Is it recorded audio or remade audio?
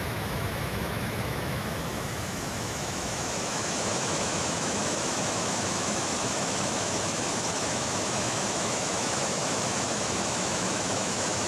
remade